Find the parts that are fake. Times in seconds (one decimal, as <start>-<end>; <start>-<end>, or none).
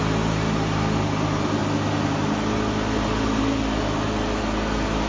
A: none